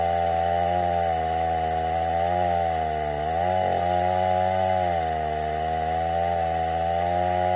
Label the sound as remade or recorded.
recorded